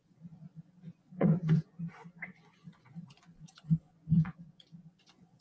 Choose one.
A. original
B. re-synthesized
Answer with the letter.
B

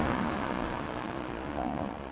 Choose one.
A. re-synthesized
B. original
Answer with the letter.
A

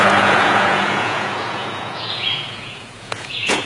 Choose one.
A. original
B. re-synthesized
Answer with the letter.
B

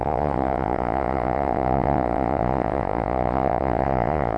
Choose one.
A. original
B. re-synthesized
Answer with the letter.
B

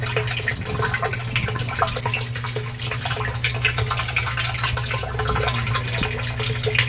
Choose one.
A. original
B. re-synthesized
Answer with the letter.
A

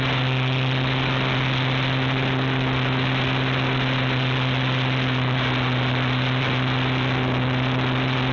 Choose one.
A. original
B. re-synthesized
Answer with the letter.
A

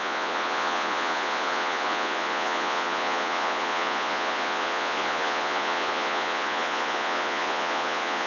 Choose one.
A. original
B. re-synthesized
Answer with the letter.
B